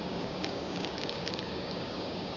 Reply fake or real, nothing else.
fake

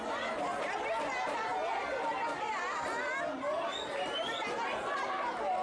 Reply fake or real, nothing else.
real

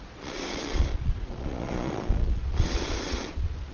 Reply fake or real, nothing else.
fake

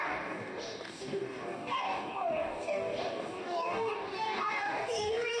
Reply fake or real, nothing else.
fake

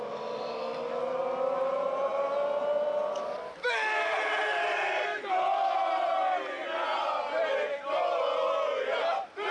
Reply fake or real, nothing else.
real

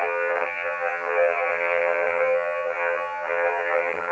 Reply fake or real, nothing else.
fake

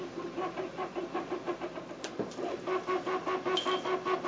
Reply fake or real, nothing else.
real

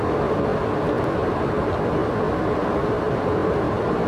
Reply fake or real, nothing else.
real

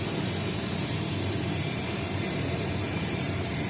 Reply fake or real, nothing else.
fake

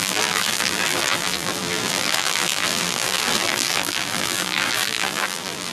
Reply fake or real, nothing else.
fake